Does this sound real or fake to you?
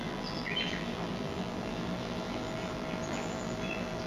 fake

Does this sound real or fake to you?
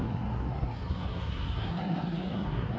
fake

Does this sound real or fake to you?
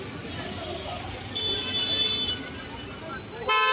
real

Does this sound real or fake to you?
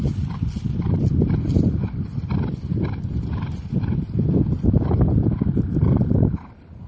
real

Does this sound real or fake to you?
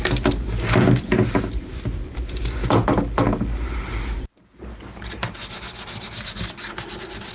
real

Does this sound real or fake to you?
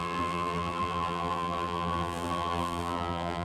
fake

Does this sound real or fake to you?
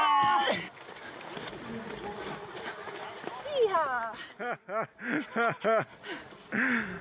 real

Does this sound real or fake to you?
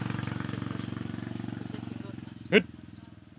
real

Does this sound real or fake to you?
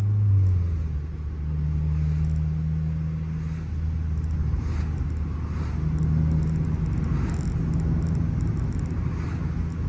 real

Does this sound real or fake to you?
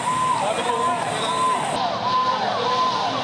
real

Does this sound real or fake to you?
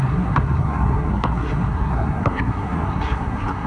fake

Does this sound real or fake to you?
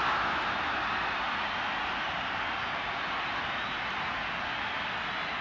real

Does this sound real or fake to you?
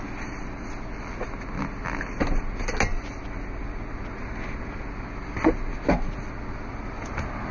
real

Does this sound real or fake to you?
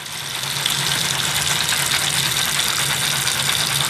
real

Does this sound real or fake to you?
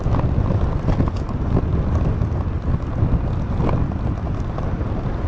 real